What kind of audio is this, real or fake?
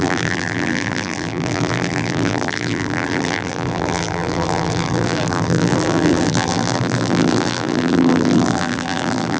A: fake